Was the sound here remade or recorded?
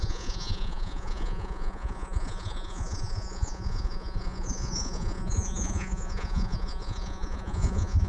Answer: remade